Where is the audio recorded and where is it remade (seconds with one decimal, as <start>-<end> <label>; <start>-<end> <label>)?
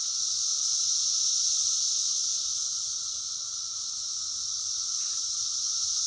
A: 0.0-6.1 recorded